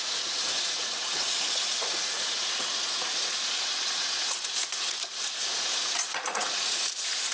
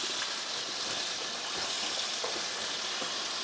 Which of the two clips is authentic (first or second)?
second